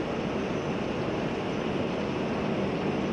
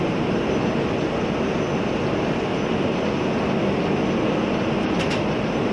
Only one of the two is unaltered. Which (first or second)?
second